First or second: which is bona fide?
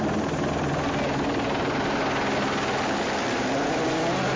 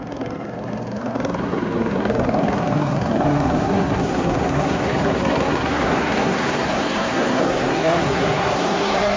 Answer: first